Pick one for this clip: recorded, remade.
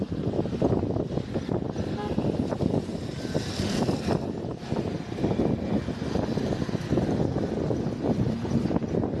recorded